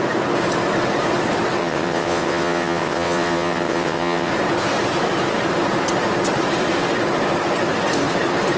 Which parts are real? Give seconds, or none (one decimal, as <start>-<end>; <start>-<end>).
0.0-1.6; 4.3-8.6